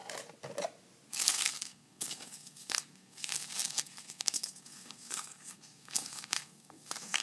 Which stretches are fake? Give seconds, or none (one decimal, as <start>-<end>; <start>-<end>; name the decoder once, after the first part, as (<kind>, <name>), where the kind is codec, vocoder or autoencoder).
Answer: 1.1-7.2 (codec, SNAC)